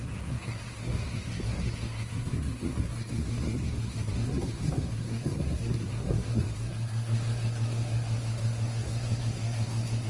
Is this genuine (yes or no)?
no